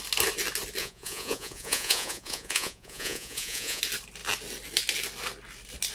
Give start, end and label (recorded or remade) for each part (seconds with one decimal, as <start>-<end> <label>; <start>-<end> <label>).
0.0-0.8 recorded; 0.8-3.8 remade; 3.8-5.9 recorded